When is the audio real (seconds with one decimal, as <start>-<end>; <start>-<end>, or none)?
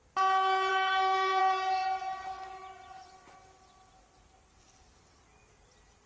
0.0-0.7; 1.4-6.1